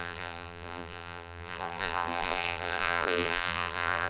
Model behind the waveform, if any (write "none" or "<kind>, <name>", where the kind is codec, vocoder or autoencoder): vocoder, BigVGAN v2